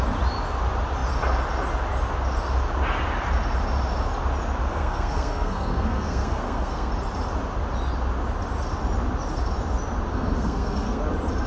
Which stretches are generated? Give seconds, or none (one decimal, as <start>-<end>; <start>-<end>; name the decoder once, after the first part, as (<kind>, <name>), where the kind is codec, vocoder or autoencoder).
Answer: 4.7-6.9 (codec, SNAC); 10.1-11.0